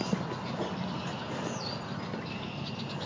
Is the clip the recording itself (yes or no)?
yes